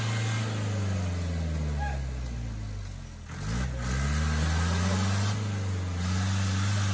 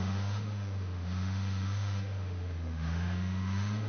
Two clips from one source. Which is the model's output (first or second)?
second